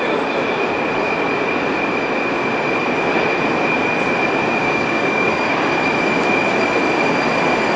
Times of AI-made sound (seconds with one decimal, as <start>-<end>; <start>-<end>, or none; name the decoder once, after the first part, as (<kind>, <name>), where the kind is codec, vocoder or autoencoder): 4.6-5.6 (codec, DAC)